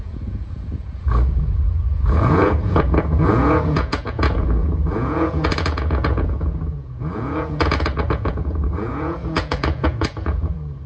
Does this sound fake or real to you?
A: fake